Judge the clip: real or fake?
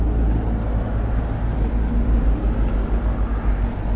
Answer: real